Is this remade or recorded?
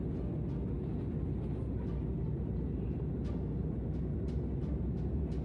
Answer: recorded